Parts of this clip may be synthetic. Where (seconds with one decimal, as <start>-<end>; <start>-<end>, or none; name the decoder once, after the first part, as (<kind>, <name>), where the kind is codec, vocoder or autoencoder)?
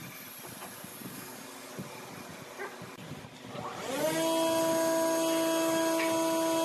0.9-1.7 (codec, DAC)